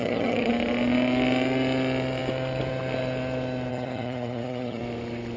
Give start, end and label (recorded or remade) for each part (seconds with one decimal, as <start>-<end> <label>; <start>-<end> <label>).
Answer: 0.0-0.5 remade; 0.5-3.7 recorded; 3.7-4.8 remade; 4.8-5.4 recorded